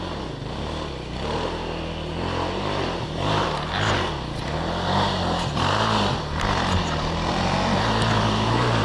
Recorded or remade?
recorded